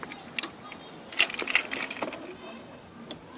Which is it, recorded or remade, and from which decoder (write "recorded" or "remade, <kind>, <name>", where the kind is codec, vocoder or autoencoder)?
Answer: recorded